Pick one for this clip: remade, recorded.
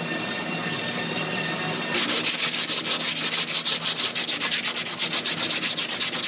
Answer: recorded